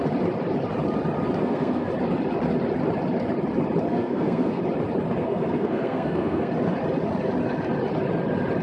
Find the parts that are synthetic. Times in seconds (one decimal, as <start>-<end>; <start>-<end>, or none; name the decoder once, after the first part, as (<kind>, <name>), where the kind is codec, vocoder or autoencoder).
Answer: 1.4-1.9 (codec, SNAC); 3.9-4.6; 5.2-6.5